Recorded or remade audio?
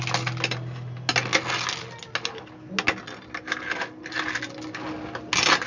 recorded